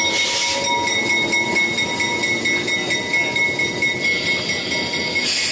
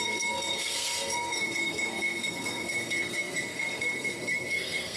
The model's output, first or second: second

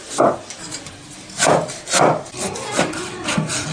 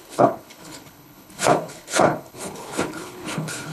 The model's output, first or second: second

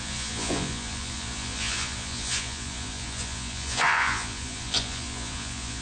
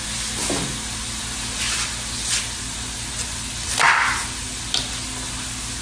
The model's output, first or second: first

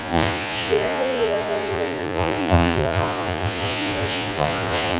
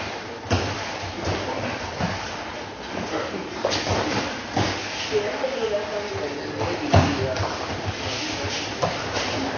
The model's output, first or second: first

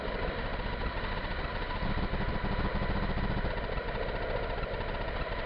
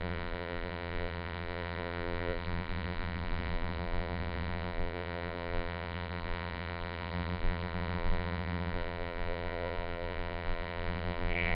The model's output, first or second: second